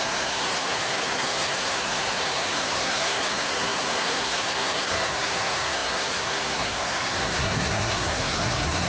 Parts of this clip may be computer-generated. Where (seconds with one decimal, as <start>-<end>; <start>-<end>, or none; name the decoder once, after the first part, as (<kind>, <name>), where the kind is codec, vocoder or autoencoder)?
0.0-8.9 (codec, SNAC)